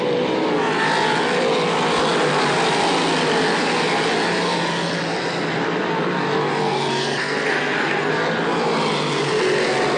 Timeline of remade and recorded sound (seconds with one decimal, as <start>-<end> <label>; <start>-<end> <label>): 0.0-6.6 recorded; 6.6-8.1 remade; 8.1-10.0 recorded